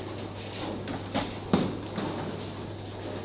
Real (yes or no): yes